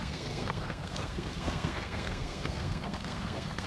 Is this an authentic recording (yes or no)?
no